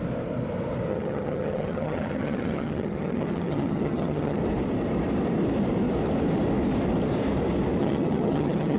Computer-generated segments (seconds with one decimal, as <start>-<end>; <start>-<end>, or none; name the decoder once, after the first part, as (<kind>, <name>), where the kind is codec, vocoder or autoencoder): 0.9-4.4 (vocoder, HiFi-GAN); 7.8-8.8